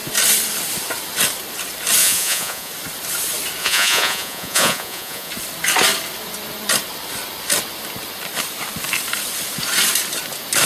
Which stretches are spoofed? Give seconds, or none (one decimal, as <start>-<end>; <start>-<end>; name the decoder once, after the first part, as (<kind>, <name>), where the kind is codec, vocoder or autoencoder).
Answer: 2.0-2.7 (vocoder, Vocos); 3.6-5.3